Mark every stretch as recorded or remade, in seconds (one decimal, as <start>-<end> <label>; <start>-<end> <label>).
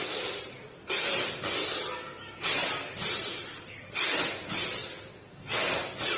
0.0-2.6 recorded; 2.6-3.5 remade; 3.5-6.2 recorded